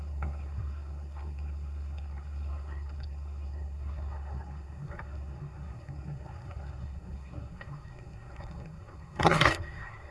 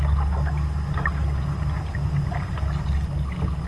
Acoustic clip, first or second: second